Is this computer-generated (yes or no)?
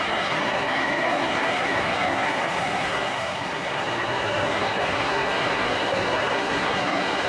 yes